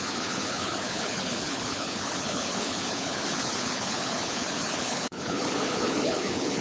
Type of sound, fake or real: fake